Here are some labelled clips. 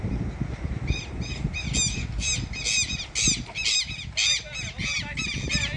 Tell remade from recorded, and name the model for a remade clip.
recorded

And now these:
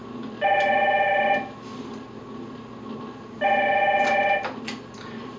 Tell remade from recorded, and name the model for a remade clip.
recorded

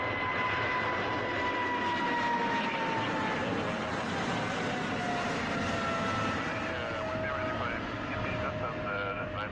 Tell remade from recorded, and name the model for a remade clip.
recorded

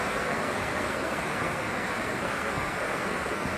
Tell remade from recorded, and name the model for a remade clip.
remade, codec, SNAC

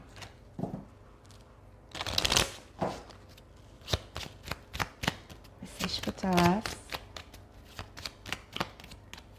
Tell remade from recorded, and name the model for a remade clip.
recorded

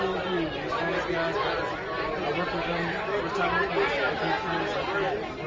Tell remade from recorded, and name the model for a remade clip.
recorded